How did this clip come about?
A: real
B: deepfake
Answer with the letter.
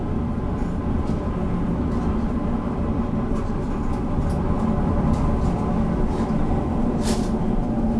A